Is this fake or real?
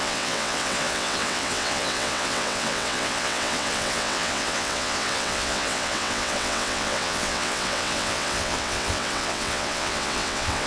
fake